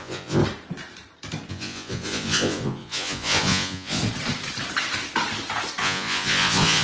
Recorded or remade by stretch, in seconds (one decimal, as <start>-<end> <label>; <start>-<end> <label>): 0.0-0.4 remade; 0.4-1.5 recorded; 1.5-4.0 remade; 4.0-5.8 recorded; 5.8-6.8 remade